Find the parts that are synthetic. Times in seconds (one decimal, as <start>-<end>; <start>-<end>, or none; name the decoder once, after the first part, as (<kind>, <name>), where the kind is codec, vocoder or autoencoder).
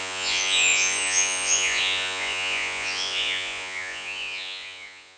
0.0-5.2 (vocoder, Vocos)